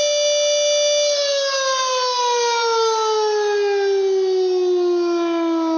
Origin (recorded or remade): recorded